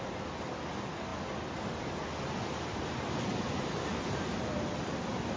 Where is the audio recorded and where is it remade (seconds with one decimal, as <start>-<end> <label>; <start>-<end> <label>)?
0.0-5.4 recorded